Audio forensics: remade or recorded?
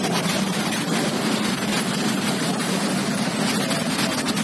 recorded